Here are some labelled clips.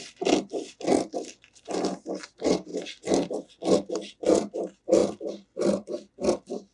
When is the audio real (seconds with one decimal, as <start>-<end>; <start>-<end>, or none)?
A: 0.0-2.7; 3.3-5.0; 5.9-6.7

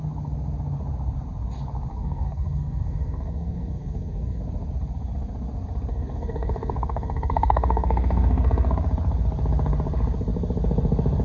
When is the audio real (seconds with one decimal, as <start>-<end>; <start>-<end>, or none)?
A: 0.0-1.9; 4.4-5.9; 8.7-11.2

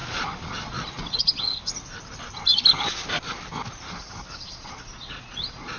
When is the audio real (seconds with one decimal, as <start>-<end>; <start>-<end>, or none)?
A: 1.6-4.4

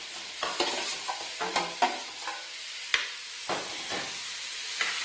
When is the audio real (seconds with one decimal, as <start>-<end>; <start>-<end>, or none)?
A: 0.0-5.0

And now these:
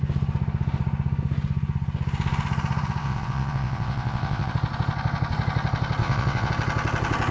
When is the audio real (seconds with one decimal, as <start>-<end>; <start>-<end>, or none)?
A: 0.0-3.0; 4.5-6.0; 6.5-7.3

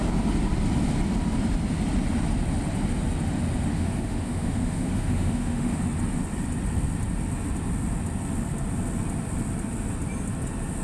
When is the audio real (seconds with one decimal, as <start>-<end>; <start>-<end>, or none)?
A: 0.0-3.7; 5.8-10.8

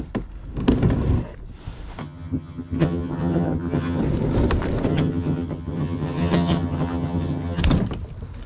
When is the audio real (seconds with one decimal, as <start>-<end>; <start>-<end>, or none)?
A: 0.0-2.0; 4.0-4.9; 7.6-8.5

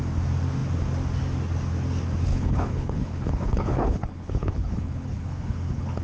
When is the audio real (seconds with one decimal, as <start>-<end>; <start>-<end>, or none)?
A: 0.0-2.3